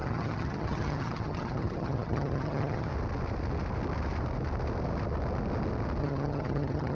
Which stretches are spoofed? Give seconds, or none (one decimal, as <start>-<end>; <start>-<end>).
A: 0.0-2.9; 6.0-6.9